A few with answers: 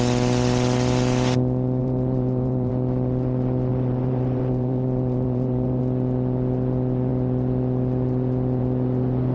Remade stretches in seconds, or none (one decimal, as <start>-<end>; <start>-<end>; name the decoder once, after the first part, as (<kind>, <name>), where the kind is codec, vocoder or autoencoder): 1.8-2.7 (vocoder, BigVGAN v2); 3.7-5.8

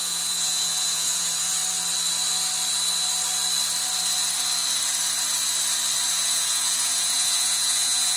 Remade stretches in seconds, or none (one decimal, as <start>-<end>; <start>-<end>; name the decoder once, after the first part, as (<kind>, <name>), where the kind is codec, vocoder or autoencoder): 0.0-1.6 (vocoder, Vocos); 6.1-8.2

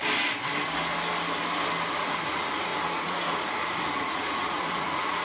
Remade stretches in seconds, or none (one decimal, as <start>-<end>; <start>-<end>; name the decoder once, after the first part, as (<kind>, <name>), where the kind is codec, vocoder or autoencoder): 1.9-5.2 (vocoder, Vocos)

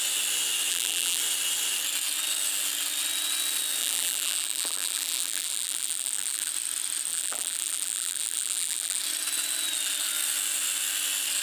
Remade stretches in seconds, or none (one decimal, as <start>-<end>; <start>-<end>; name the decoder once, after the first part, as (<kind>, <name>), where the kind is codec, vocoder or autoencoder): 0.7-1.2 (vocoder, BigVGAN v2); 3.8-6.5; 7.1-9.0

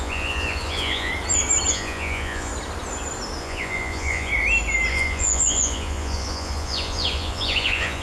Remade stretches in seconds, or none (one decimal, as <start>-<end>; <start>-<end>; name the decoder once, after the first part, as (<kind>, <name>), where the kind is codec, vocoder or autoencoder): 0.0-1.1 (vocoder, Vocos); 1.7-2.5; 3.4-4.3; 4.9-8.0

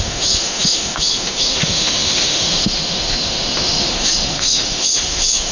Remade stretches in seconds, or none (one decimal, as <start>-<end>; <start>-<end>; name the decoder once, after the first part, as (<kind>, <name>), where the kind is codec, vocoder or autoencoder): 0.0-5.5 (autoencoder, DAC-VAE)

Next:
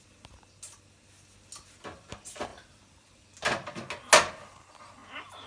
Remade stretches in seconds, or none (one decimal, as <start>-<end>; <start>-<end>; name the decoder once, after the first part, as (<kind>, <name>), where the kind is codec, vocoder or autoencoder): none